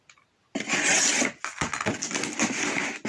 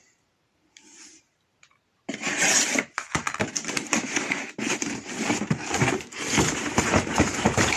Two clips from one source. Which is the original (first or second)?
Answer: first